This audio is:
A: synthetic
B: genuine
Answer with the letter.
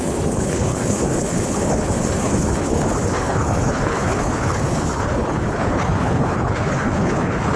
A